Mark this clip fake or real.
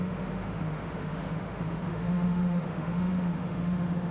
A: fake